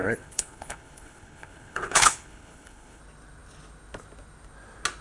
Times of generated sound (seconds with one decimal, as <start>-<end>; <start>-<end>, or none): 0.0-3.0